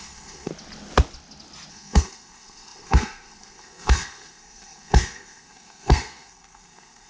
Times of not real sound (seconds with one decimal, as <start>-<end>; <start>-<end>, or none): 0.0-0.5; 1.7-7.1